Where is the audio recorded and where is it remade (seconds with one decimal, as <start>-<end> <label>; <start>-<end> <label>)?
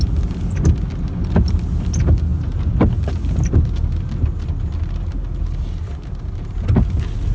0.0-7.3 recorded